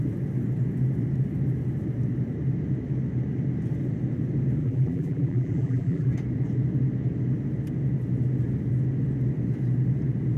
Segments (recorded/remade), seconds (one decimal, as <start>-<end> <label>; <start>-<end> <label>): 0.0-4.6 recorded; 4.6-6.1 remade; 6.1-10.4 recorded